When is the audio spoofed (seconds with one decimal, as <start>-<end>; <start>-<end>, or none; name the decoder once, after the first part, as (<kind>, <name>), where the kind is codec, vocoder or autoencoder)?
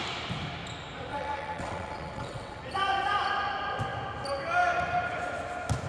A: 1.1-2.6 (vocoder, WaveNeXt)